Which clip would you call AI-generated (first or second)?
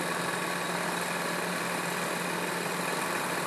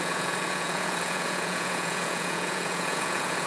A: second